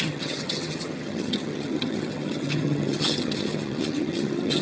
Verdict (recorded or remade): remade